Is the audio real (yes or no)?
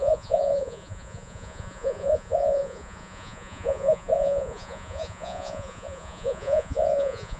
no